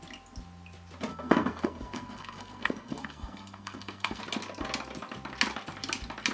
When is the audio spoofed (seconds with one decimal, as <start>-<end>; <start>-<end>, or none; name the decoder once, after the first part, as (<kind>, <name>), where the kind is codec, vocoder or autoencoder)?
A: 1.1-4.2 (codec, SNAC)

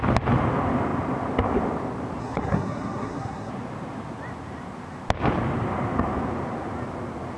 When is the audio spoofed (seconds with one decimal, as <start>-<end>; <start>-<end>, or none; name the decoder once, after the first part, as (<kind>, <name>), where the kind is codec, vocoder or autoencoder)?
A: 2.2-3.5 (codec, SNAC)